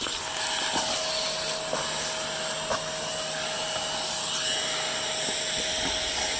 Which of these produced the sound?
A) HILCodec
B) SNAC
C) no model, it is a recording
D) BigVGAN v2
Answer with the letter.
C